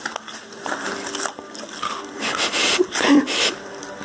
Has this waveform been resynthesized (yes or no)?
no